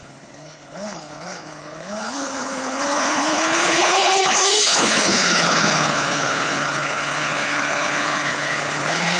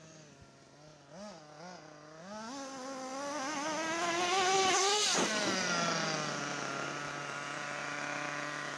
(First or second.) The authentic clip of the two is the second